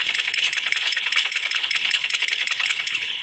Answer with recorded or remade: remade